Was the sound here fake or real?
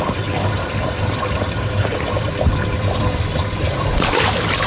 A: fake